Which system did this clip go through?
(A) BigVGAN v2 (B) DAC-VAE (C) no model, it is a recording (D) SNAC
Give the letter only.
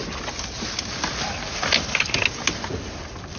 C